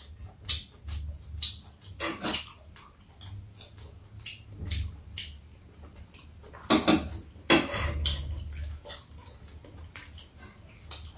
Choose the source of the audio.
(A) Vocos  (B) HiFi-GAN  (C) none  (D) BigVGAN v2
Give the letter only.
C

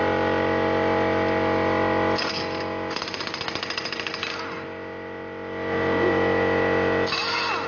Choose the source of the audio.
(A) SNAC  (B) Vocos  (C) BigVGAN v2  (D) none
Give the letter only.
D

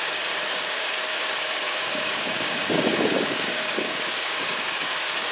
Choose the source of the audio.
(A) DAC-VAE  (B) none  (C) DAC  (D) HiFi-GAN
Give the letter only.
C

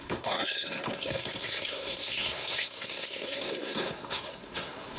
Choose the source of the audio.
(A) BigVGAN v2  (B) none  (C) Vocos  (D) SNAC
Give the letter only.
D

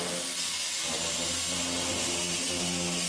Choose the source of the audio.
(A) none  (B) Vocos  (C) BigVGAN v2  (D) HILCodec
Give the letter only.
A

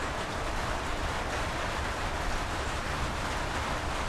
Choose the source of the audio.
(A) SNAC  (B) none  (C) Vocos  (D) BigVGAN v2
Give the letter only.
B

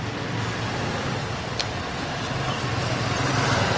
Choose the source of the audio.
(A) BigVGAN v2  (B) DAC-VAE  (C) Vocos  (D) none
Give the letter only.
D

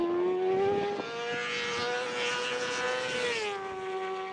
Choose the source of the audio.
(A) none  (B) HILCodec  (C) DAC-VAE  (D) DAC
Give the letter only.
A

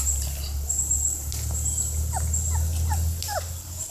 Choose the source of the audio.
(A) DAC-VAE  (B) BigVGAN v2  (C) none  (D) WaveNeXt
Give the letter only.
C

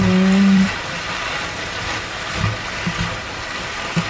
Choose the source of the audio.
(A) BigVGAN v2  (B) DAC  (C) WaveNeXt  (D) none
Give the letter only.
A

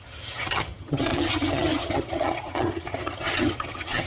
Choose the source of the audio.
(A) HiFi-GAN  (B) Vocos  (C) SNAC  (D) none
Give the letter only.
A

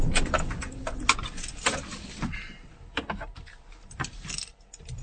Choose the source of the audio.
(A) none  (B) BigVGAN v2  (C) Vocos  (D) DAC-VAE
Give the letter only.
A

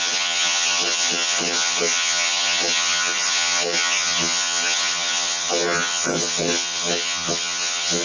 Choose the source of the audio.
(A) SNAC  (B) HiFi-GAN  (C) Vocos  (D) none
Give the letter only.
B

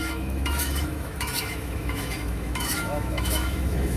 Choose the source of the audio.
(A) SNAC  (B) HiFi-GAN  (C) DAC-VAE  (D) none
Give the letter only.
C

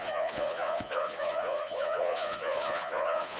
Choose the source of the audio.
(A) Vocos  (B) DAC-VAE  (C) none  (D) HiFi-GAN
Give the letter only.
A